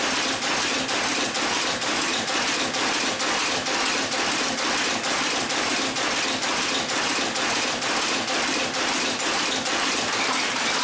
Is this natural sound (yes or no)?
yes